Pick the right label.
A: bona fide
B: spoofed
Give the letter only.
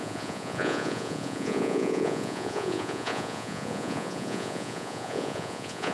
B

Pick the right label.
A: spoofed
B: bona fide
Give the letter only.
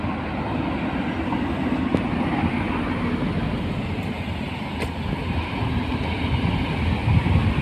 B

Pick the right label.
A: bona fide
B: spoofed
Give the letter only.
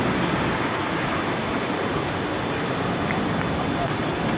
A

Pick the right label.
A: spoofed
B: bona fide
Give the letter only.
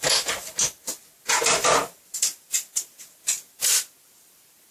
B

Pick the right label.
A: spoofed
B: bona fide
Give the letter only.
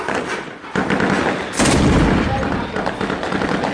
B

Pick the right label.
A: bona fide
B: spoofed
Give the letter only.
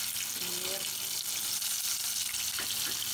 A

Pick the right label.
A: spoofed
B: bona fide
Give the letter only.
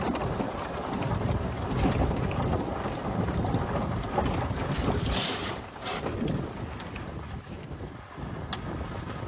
B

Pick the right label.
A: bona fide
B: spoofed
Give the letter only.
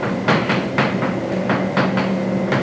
A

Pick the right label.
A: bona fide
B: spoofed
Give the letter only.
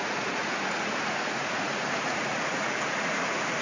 B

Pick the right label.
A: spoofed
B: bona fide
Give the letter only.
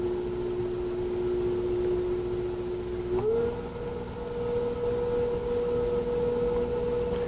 B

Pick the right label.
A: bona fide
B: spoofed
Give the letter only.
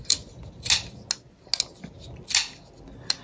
A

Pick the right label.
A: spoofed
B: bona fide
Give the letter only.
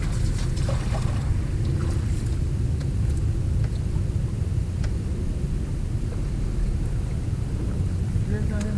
B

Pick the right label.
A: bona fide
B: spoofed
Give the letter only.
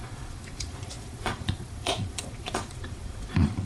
B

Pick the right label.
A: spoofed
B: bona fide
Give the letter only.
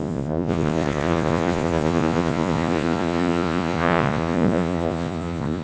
A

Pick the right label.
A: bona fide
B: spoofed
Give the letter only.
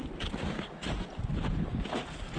A